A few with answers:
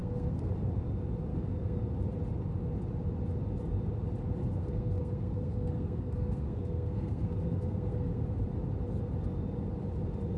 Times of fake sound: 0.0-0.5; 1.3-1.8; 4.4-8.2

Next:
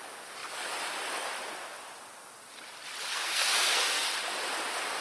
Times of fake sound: 3.1-4.1

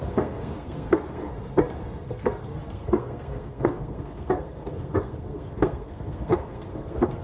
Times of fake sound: 0.0-7.2